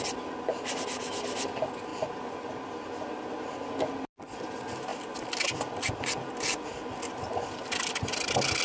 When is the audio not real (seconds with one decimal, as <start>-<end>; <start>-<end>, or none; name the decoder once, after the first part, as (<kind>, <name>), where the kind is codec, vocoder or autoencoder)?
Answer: none